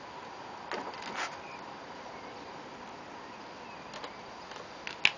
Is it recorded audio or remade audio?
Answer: recorded